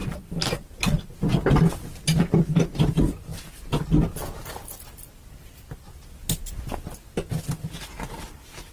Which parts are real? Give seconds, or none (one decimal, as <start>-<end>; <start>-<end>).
0.0-8.7